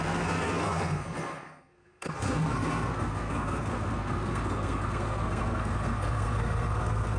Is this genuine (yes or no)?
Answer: no